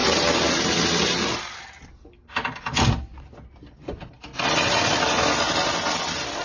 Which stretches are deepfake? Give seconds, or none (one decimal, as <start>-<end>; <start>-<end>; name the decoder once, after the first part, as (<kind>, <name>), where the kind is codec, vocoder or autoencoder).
none